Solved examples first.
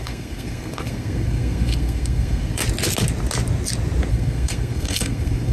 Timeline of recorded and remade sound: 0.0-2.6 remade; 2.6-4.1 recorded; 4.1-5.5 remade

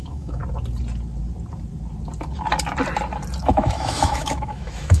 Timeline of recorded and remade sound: 0.0-0.4 remade; 0.4-3.4 recorded; 3.4-5.0 remade

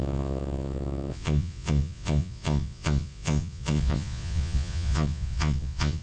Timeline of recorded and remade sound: 0.0-6.0 remade

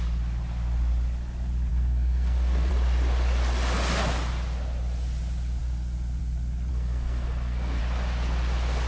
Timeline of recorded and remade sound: 0.0-1.7 recorded; 1.7-2.7 remade; 2.7-6.7 recorded; 6.7-7.8 remade; 7.8-8.9 recorded

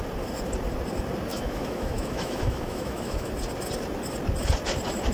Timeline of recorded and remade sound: 0.0-1.3 recorded; 1.3-3.3 remade; 3.3-5.1 recorded